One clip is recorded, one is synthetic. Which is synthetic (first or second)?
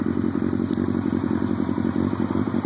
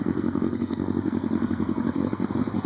second